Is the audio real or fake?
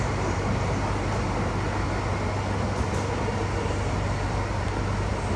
real